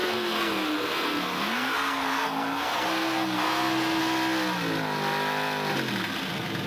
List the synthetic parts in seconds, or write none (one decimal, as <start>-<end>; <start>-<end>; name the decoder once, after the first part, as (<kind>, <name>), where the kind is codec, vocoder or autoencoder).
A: 0.0-4.0 (codec, SNAC)